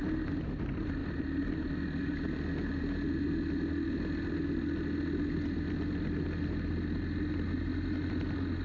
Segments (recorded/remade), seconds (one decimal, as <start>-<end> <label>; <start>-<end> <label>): 0.0-8.6 recorded